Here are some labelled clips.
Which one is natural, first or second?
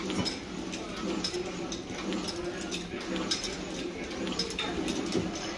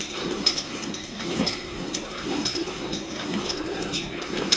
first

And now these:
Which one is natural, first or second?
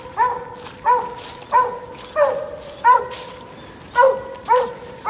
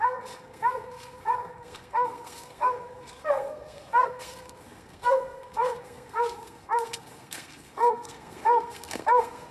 first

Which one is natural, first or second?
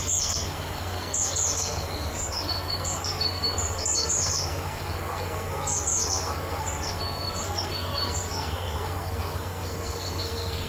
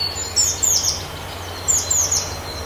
second